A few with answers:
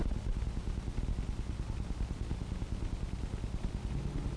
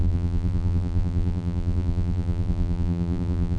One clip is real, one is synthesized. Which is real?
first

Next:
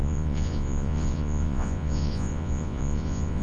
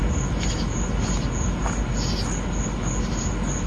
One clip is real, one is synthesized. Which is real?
second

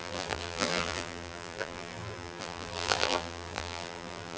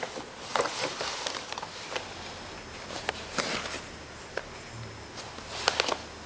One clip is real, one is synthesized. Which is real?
second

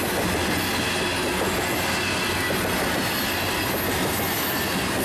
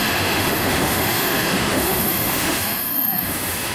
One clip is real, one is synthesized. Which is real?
first